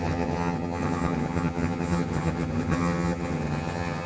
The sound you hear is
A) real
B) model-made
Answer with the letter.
B